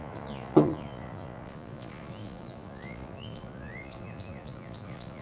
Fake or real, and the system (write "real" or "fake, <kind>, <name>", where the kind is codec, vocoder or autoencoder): fake, vocoder, Vocos